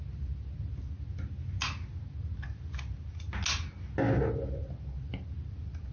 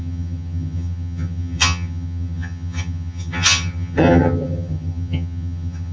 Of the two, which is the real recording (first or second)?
first